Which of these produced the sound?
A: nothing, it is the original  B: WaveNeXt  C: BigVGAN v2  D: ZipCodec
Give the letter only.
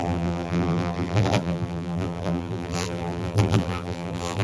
C